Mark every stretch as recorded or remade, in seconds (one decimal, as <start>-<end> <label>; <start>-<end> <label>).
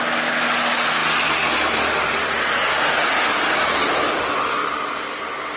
0.0-5.6 recorded